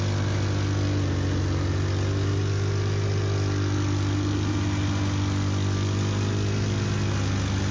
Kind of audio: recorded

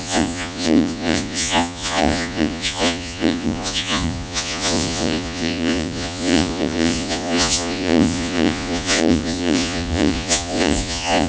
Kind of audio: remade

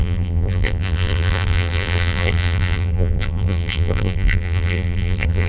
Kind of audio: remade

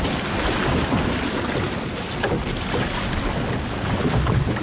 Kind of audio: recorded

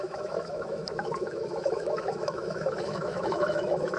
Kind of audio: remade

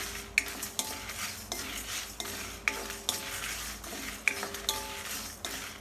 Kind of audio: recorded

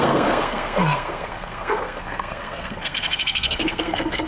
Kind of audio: remade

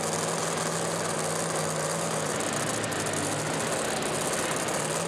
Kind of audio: recorded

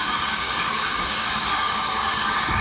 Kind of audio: remade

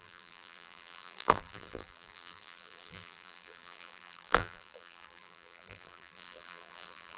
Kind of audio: remade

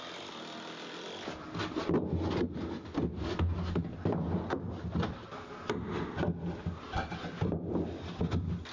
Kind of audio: recorded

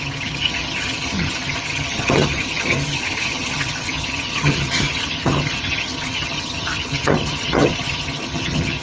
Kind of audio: remade